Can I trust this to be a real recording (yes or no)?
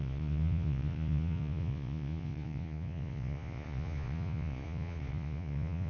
no